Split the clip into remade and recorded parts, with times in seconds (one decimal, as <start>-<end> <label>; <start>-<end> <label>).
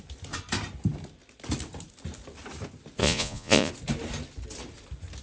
0.0-3.0 recorded; 3.0-3.7 remade; 3.7-5.2 recorded